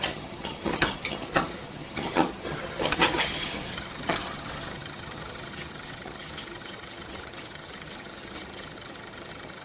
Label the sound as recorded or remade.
remade